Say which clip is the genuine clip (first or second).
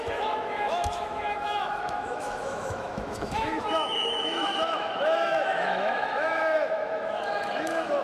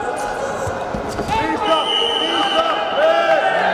second